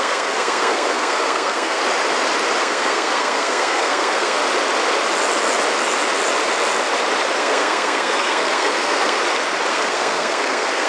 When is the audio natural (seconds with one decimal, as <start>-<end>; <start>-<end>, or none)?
1.8-2.6; 4.4-7.4; 9.2-9.7